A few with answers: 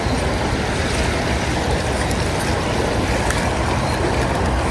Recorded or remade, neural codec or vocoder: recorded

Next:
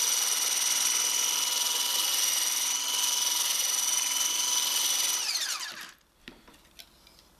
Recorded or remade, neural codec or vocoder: recorded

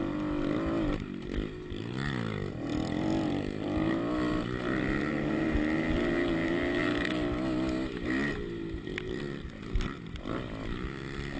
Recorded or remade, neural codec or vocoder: recorded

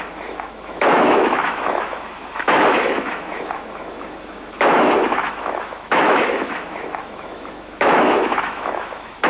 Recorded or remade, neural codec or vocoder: remade, autoencoder, DAC-VAE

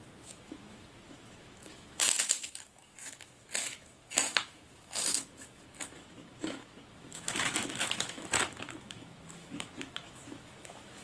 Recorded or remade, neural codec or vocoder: remade, autoencoder, DAC-VAE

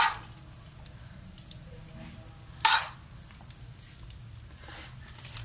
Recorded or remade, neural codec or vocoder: recorded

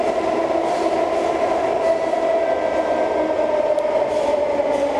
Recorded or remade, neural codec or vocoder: recorded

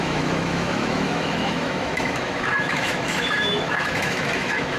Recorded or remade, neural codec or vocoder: remade, autoencoder, DAC-VAE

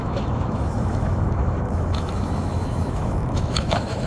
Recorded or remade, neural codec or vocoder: remade, autoencoder, DAC-VAE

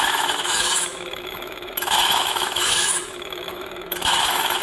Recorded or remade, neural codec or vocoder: remade, autoencoder, DAC-VAE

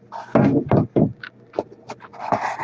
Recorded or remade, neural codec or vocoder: recorded